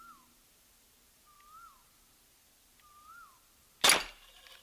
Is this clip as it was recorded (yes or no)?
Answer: yes